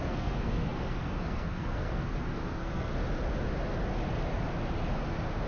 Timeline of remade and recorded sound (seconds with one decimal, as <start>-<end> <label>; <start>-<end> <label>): 0.0-2.9 remade; 2.9-5.5 recorded